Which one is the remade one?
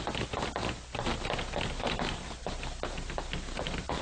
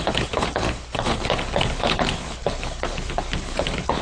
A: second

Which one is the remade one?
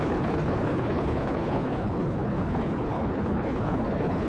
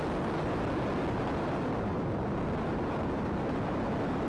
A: first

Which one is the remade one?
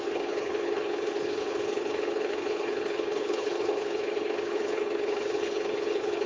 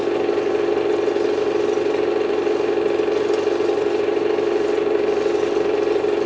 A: first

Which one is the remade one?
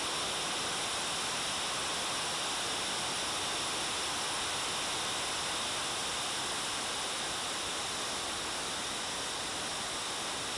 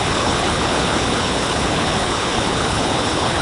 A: second